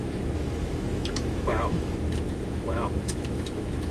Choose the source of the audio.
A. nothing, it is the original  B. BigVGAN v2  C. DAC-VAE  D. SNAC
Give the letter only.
C